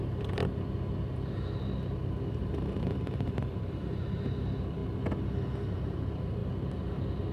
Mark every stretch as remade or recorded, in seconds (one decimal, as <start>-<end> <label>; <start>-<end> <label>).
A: 0.0-0.4 remade; 0.4-2.3 recorded; 2.3-4.8 remade; 4.8-5.7 recorded; 5.7-6.4 remade; 6.4-7.3 recorded

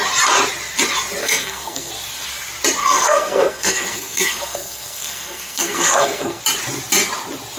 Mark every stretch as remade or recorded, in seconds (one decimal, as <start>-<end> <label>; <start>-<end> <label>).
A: 0.0-1.2 recorded; 1.2-1.9 remade; 1.9-2.8 recorded; 2.8-6.4 remade; 6.4-7.6 recorded

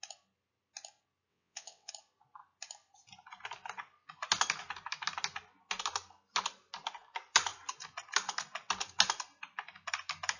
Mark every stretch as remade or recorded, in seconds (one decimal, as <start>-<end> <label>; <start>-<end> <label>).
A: 0.0-1.3 recorded; 1.3-1.9 remade; 1.9-10.4 recorded

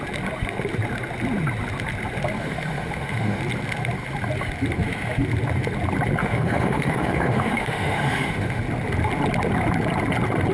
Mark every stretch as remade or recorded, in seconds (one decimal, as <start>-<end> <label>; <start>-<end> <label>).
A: 0.0-2.4 recorded; 2.4-3.4 remade; 3.4-6.2 recorded; 6.2-8.6 remade; 8.6-10.5 recorded

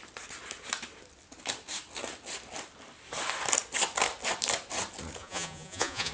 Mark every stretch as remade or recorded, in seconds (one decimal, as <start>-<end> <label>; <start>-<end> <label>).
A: 0.0-5.2 recorded; 5.2-6.1 remade